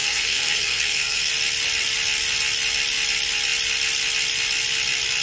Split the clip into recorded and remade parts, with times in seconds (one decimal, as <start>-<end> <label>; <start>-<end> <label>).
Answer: 0.0-1.3 remade; 1.3-5.2 recorded